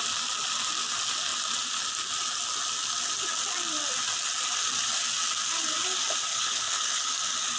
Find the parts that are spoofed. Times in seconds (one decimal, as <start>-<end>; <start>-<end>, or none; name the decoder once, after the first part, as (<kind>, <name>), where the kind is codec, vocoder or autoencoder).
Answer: 6.3-7.1 (codec, HILCodec)